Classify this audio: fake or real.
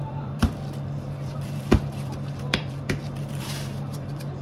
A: fake